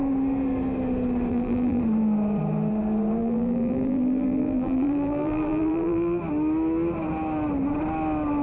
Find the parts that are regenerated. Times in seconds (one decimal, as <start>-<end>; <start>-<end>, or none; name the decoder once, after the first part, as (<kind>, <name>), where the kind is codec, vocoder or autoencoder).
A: 1.3-1.8 (vocoder, BigVGAN v2); 3.2-6.2